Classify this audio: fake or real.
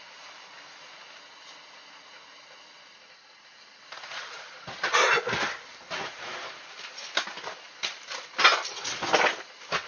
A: real